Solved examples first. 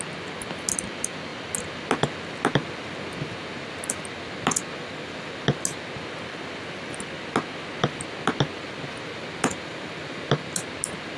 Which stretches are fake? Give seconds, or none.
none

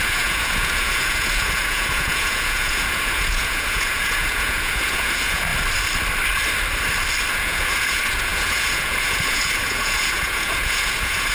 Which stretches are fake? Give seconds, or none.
0.0-5.5 (vocoder, Vocos); 7.3-11.3

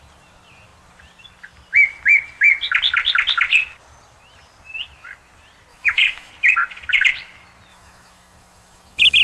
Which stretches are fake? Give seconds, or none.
5.7-6.3 (autoencoder, DAC-VAE); 7.7-9.2

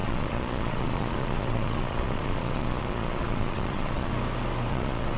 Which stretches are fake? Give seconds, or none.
0.0-4.1 (vocoder, Vocos); 4.7-5.2

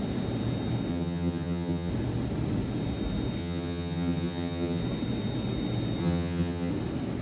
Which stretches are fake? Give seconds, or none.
0.9-1.9 (vocoder, HiFi-GAN); 3.4-4.8; 6.0-6.7

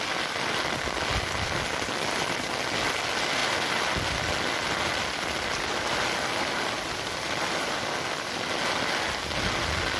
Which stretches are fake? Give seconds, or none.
none

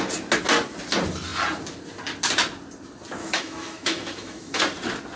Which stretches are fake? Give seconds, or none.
3.2-4.6 (autoencoder, DAC-VAE)

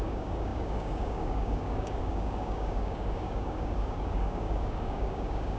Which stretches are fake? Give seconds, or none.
0.0-5.6 (codec, DAC)